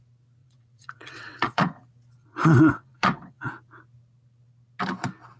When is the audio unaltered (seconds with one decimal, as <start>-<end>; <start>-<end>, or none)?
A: 0.0-0.4; 1.8-2.2; 3.5-5.4